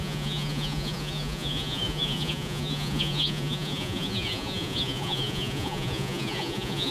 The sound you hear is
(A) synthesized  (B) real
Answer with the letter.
A